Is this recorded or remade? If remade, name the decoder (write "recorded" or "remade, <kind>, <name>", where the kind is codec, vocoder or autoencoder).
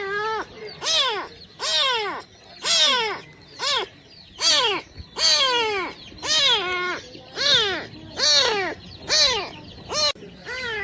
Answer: recorded